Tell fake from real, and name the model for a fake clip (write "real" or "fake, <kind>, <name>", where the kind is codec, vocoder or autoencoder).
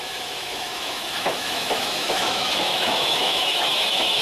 fake, autoencoder, DAC-VAE